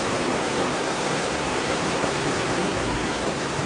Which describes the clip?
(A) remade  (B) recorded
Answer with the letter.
A